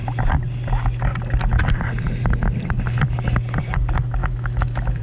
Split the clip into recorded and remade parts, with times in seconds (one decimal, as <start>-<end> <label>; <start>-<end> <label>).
0.0-4.2 recorded; 4.2-5.0 remade